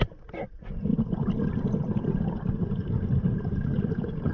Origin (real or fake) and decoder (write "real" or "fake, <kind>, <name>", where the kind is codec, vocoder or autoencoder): real